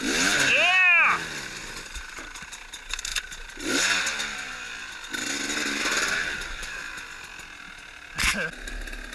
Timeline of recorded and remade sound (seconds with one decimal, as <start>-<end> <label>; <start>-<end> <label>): 0.0-9.1 recorded